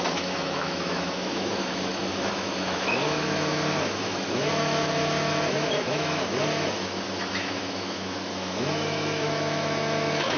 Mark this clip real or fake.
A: fake